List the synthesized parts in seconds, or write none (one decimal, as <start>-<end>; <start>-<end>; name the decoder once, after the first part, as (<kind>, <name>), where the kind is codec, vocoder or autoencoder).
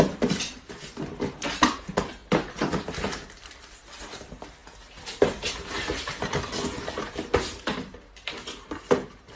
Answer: 2.2-4.0 (vocoder, BigVGAN v2)